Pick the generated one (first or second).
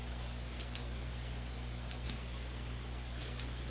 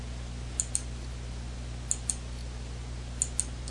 first